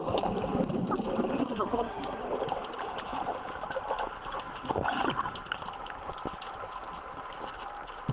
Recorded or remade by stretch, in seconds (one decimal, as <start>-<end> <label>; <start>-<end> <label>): 0.0-1.4 recorded; 1.4-2.2 remade; 2.2-8.1 recorded